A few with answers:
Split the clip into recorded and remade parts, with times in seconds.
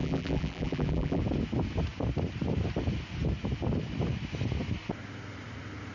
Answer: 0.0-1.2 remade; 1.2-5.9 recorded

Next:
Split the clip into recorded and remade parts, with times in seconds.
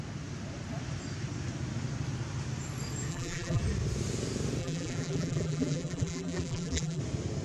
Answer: 0.0-3.1 recorded; 3.1-3.6 remade; 3.6-4.6 recorded; 4.6-7.0 remade; 7.0-7.4 recorded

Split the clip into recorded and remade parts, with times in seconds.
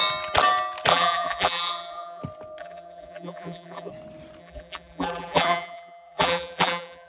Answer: 0.0-0.9 recorded; 0.9-2.2 remade; 2.2-2.6 recorded; 2.6-3.9 remade; 3.9-4.4 recorded; 4.4-7.1 remade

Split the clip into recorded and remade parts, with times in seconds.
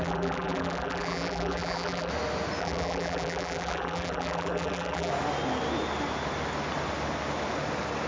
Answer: 0.0-2.1 remade; 2.1-2.6 recorded; 2.6-5.1 remade; 5.1-8.1 recorded